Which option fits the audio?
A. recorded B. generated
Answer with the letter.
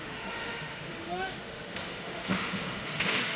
B